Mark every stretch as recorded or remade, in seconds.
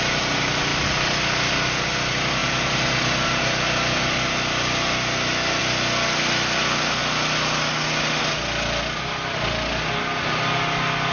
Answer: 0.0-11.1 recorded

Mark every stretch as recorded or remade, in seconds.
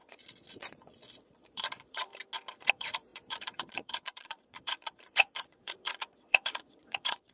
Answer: 0.0-2.1 remade; 2.1-2.7 recorded; 2.7-7.3 remade